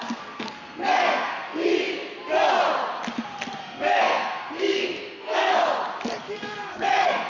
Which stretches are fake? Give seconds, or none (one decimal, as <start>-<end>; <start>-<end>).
0.0-1.7; 3.6-5.6; 6.3-7.3